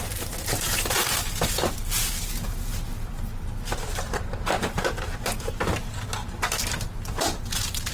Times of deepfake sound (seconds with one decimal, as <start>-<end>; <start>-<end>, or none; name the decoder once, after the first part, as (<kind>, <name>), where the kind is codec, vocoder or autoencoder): 0.0-5.8 (vocoder, BigVGAN v2); 6.3-7.9

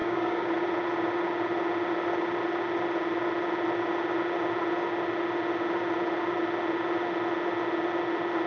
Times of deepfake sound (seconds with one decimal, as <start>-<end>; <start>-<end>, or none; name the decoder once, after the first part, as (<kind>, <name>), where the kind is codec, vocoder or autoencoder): 0.0-0.5 (codec, DAC)